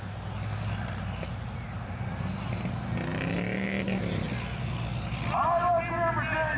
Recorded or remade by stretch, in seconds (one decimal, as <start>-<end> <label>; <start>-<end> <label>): 0.0-6.6 recorded